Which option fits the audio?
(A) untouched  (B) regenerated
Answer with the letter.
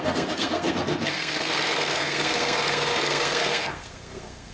B